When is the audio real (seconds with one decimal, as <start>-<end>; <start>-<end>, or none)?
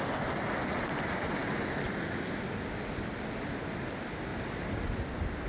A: 0.0-5.5